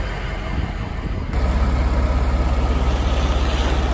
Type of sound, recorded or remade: recorded